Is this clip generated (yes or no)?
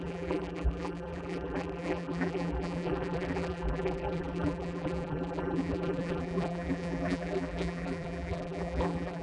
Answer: yes